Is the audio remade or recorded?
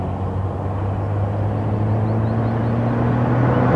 recorded